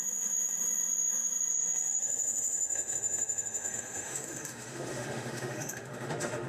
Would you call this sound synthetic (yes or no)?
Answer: yes